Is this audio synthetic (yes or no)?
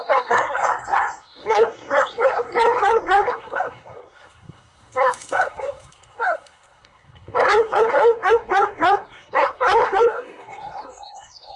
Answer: yes